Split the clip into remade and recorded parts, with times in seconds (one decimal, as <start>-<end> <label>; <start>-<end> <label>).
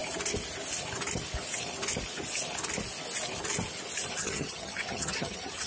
0.0-4.2 recorded; 4.2-5.7 remade